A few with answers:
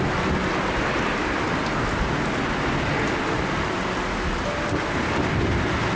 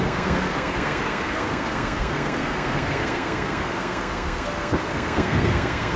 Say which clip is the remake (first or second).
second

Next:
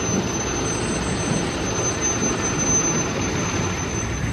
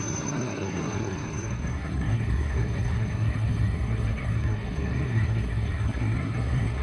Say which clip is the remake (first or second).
second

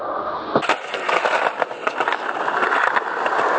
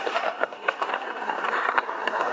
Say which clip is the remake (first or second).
second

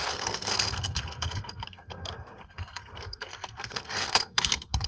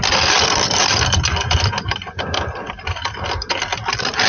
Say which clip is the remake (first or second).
first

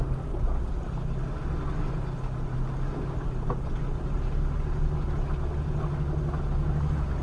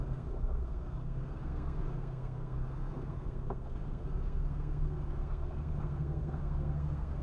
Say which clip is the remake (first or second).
second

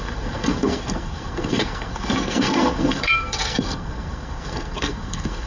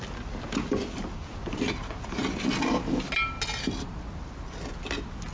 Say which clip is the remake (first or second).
first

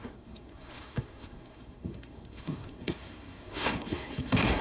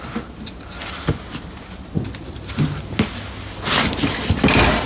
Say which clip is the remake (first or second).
first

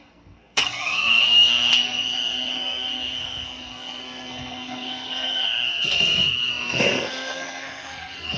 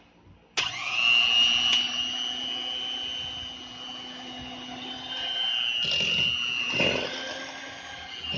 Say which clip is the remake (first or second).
first